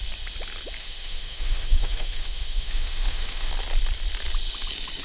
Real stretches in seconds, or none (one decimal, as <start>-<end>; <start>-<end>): 0.0-0.8; 3.5-5.0